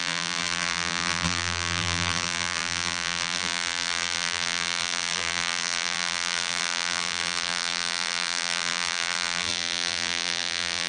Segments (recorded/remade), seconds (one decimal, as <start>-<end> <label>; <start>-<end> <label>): 0.0-10.9 remade